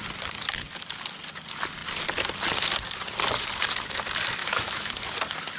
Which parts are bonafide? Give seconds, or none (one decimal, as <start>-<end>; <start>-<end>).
0.0-4.4; 4.9-5.6